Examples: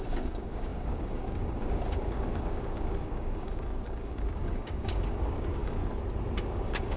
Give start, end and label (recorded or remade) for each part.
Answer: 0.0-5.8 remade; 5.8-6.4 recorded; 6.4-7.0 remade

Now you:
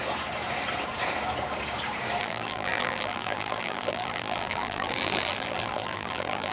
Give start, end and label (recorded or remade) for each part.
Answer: 0.0-2.2 recorded; 2.2-6.5 remade

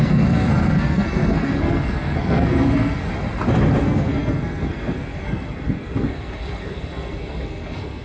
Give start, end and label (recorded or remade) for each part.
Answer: 0.0-3.1 remade; 3.1-3.8 recorded; 3.8-8.0 remade

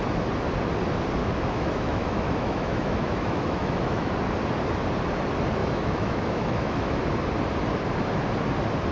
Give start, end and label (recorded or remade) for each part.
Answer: 0.0-1.2 recorded; 1.2-4.1 remade; 4.1-5.6 recorded; 5.6-7.0 remade; 7.0-8.9 recorded

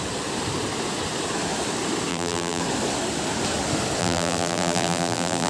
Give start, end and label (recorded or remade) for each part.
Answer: 0.0-2.1 recorded; 2.1-2.6 remade; 2.6-4.0 recorded; 4.0-5.5 remade